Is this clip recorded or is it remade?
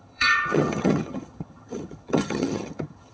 remade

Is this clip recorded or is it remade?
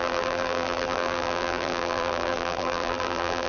remade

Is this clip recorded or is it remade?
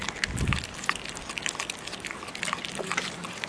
recorded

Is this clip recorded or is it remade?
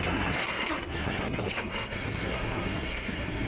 remade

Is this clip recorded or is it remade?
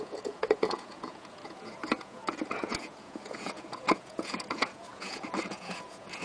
remade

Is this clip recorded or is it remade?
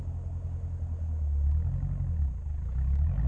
recorded